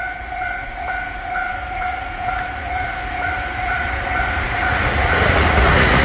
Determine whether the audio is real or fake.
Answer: fake